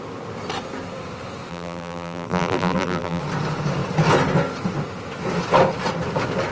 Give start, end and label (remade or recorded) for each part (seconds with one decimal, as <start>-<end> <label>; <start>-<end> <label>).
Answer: 0.0-1.5 recorded; 1.5-3.2 remade; 3.2-6.5 recorded